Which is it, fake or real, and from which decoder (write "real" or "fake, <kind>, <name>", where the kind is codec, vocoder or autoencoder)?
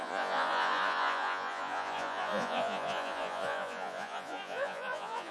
fake, vocoder, Vocos